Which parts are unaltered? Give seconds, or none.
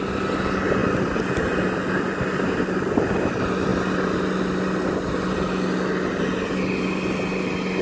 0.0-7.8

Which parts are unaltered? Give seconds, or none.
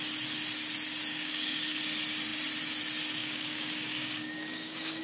0.0-1.1; 1.8-3.2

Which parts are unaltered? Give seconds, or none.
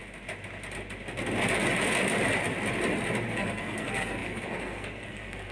0.0-3.3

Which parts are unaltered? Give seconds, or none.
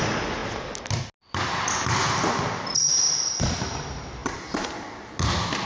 0.0-4.2; 5.0-5.7